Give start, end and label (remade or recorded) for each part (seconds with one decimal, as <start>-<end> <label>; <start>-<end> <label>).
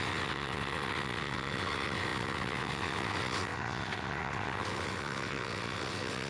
0.0-6.3 remade